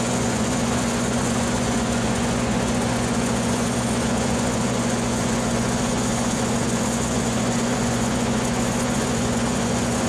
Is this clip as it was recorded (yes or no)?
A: no